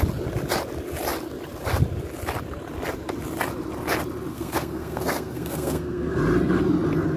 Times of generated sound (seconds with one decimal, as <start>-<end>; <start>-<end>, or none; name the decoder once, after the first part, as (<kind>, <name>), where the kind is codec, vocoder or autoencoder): 4.3-6.2 (codec, SNAC)